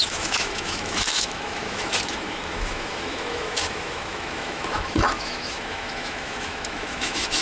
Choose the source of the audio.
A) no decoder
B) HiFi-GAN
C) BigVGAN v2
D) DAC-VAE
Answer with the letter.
D